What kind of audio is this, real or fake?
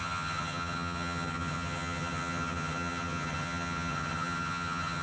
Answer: fake